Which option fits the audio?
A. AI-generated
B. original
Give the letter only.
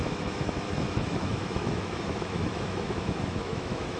A